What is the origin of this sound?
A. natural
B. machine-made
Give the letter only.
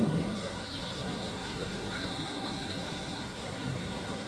B